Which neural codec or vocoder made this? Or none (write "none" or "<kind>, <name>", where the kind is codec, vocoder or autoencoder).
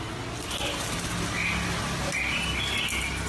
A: none